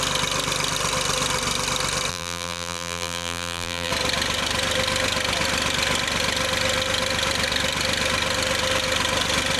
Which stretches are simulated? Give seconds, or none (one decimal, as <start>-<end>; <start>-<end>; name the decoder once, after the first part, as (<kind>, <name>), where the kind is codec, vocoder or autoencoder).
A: 2.1-3.9 (vocoder, BigVGAN v2)